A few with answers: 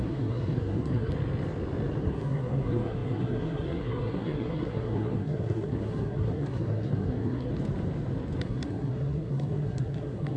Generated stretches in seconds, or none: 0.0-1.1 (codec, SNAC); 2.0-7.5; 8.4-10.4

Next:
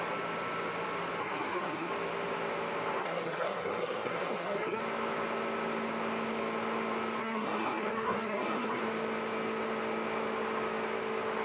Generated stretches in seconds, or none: 1.2-1.9 (codec, SNAC); 3.0-4.8; 7.2-8.8

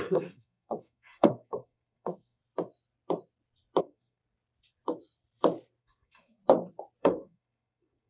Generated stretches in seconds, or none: 0.0-2.4 (codec, SNAC); 3.8-4.2; 5.8-6.4; 7.0-8.1